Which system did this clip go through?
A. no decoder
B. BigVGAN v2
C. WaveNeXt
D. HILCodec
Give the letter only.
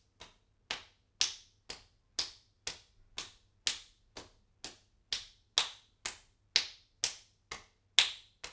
A